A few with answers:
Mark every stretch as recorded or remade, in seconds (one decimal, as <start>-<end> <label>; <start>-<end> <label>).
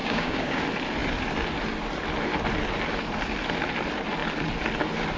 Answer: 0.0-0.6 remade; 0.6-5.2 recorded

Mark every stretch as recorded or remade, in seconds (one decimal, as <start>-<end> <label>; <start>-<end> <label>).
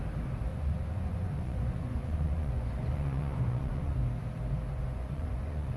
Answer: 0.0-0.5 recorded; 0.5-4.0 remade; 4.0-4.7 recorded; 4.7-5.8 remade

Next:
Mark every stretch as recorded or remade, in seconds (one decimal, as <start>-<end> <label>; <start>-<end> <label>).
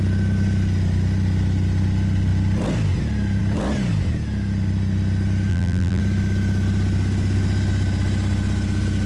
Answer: 0.0-5.5 recorded; 5.5-6.0 remade; 6.0-9.1 recorded